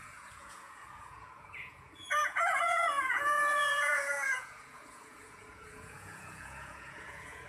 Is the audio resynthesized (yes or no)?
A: yes